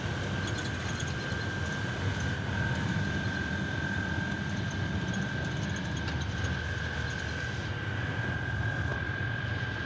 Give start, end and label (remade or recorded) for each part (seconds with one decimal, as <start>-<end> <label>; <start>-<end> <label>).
0.0-9.9 recorded